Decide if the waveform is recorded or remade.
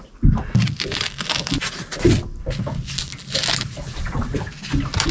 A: recorded